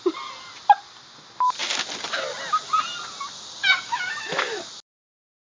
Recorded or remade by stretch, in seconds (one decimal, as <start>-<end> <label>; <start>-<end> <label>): 0.0-3.6 recorded; 3.6-4.4 remade; 4.4-5.4 recorded